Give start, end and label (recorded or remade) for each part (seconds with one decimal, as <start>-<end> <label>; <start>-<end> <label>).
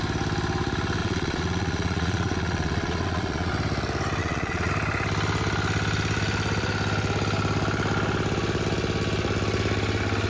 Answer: 0.0-1.0 recorded; 1.0-3.5 remade; 3.5-4.2 recorded; 4.2-4.7 remade; 4.7-10.3 recorded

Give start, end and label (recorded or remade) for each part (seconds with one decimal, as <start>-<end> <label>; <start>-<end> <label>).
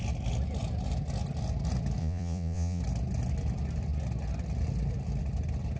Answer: 0.0-2.0 recorded; 2.0-2.8 remade; 2.8-5.8 recorded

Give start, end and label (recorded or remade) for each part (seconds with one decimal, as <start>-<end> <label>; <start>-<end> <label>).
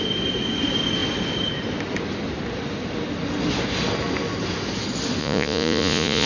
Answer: 0.0-5.2 recorded; 5.2-6.3 remade